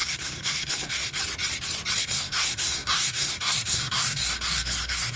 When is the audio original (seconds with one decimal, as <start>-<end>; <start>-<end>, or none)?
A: 1.2-2.0